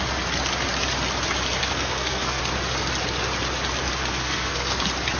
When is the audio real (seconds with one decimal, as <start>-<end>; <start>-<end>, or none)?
0.0-1.6; 2.4-4.0; 4.8-5.2